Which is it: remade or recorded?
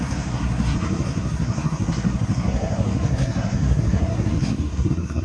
remade